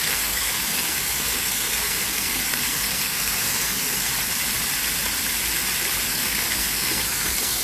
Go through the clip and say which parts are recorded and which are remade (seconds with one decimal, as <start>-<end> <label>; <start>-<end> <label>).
0.0-4.1 remade; 4.1-6.1 recorded; 6.1-7.6 remade